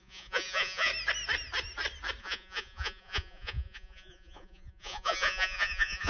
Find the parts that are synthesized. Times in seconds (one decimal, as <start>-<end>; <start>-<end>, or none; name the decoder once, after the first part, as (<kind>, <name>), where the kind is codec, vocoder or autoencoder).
0.0-0.9 (vocoder, Vocos); 2.2-6.1